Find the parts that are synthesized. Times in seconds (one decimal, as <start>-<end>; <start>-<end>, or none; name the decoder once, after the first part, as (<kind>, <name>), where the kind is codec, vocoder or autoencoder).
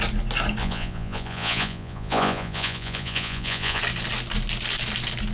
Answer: 0.6-3.8 (vocoder, Vocos)